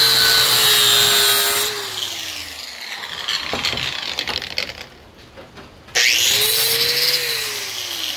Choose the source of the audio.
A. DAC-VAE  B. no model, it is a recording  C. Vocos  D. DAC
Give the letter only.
B